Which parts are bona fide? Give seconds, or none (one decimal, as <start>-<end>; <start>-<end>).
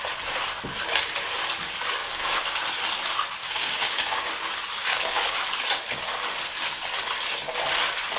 0.0-2.0; 2.6-3.4; 4.3-4.8; 5.4-8.2